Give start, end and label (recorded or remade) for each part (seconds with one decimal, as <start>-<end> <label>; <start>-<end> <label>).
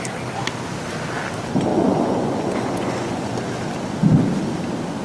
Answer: 0.0-1.7 recorded; 1.7-3.4 remade; 3.4-5.0 recorded